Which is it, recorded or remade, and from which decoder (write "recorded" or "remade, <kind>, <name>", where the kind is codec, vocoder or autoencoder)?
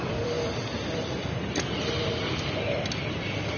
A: recorded